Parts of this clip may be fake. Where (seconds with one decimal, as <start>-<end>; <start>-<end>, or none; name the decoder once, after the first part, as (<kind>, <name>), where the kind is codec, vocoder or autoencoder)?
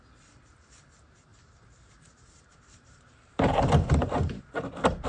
1.3-4.4 (vocoder, BigVGAN v2)